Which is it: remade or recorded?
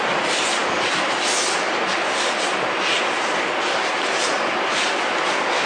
recorded